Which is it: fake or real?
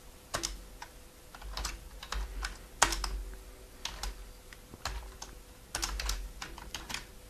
real